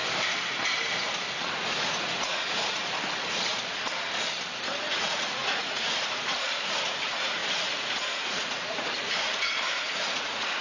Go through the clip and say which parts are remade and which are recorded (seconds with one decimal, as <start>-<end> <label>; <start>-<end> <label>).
0.0-1.5 recorded; 1.5-2.8 remade; 2.8-4.8 recorded; 4.8-10.6 remade